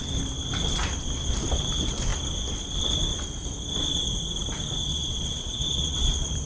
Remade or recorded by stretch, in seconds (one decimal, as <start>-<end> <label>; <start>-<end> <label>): 0.0-4.9 recorded; 4.9-6.1 remade; 6.1-6.5 recorded